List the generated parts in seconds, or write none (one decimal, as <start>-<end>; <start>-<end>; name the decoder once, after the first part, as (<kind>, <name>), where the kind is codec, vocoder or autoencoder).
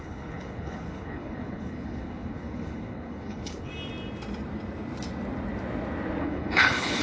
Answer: 0.0-3.7 (codec, HILCodec); 6.2-7.0